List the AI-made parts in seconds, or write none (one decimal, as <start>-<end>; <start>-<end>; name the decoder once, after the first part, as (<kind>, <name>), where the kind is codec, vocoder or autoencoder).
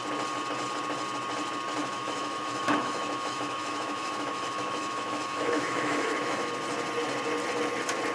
1.8-6.5 (autoencoder, DAC-VAE)